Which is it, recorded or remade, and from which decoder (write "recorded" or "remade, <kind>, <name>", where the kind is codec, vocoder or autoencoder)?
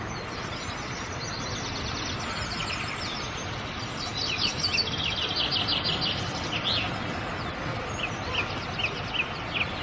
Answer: recorded